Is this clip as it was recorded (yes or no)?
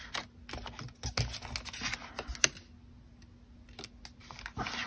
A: yes